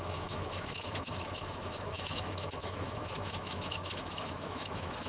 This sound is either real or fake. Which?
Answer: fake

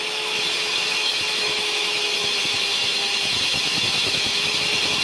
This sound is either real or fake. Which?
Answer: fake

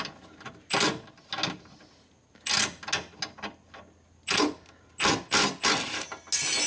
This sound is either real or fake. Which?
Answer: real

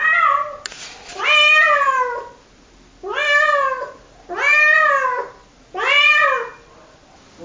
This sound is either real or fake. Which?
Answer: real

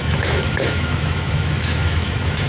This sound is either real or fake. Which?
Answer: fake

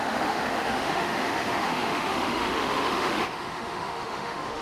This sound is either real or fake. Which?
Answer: fake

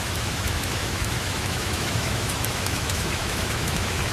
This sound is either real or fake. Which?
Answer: fake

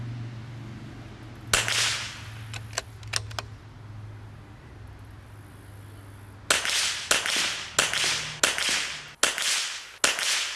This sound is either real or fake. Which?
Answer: real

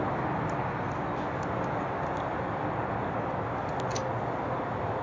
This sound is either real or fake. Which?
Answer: real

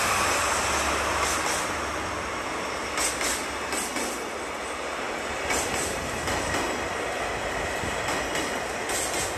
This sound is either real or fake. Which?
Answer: real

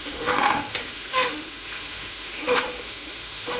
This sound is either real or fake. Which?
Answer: fake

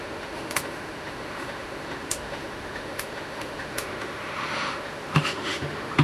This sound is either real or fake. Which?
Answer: fake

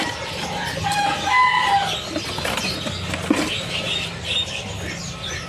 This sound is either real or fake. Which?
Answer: real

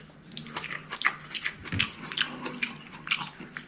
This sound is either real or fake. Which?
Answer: real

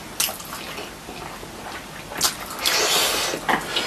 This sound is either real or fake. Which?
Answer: real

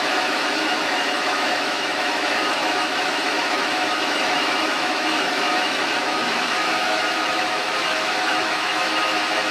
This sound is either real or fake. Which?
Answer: fake